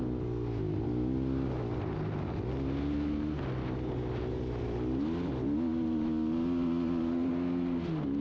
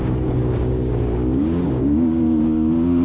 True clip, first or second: first